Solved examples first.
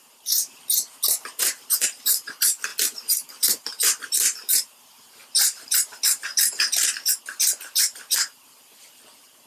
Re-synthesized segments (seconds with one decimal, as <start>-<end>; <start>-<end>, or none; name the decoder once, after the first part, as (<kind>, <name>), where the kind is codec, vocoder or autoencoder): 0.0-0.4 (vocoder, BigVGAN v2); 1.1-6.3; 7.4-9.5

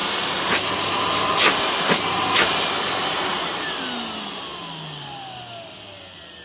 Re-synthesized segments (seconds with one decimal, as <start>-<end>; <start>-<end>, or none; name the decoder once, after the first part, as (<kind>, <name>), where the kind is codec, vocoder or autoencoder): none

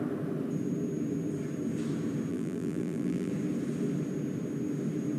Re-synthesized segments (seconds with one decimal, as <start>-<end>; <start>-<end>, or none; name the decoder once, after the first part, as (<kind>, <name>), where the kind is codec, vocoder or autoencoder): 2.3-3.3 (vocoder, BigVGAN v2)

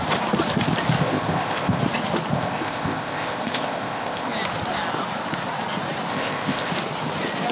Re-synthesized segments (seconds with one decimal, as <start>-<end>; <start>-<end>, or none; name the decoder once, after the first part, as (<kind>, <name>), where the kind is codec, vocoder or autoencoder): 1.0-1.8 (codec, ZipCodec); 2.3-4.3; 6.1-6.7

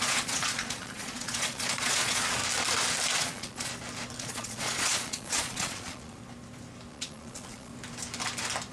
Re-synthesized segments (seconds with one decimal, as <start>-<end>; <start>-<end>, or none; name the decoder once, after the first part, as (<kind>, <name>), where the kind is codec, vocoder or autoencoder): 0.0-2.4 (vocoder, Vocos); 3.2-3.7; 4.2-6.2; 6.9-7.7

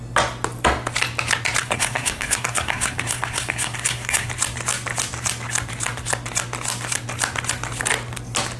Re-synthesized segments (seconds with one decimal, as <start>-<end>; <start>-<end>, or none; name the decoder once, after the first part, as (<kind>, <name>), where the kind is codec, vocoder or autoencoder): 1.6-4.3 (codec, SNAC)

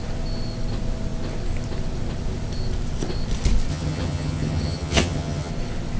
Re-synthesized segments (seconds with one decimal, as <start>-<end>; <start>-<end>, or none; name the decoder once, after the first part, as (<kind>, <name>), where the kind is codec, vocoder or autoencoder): 3.7-5.5 (vocoder, HiFi-GAN)